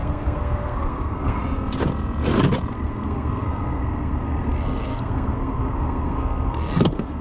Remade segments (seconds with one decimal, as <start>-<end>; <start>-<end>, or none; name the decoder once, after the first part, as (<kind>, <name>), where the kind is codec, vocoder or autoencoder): 0.0-1.4 (codec, SNAC); 2.7-7.2